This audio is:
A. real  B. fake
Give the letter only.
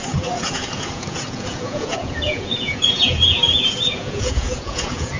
B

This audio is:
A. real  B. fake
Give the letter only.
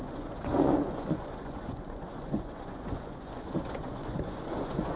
B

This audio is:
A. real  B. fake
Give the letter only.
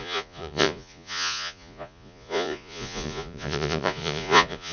B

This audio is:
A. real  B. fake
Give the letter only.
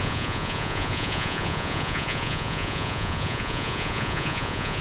B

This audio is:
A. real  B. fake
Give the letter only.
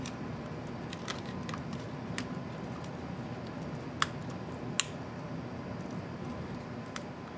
A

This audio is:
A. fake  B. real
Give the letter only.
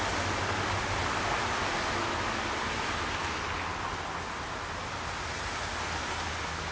B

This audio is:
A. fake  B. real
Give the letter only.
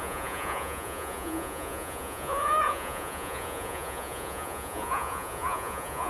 A